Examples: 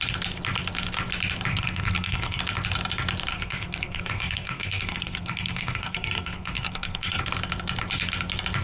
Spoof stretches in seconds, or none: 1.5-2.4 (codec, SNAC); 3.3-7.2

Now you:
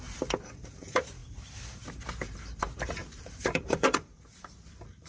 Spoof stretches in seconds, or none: 0.0-5.1 (vocoder, BigVGAN v2)

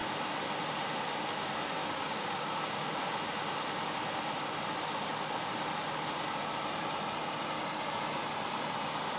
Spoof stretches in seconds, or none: 1.8-2.9 (codec, DAC)

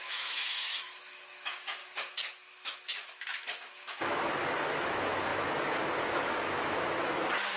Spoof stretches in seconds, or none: 0.0-7.6 (autoencoder, DAC-VAE)